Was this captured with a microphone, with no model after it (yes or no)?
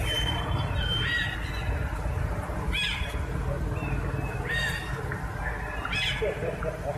yes